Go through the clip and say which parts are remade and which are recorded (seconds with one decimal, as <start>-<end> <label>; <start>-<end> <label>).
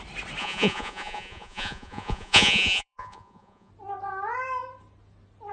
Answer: 0.0-0.4 recorded; 0.4-3.7 remade; 3.7-5.5 recorded